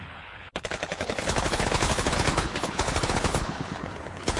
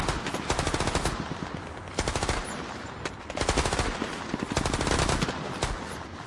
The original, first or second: second